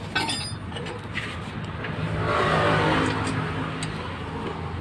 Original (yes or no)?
yes